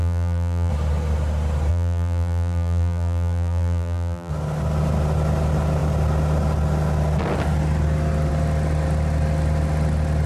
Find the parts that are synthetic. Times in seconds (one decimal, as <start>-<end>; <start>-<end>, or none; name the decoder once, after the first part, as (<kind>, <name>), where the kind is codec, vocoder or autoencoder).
0.0-0.7 (vocoder, BigVGAN v2); 1.7-4.3